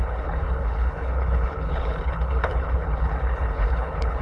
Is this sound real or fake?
fake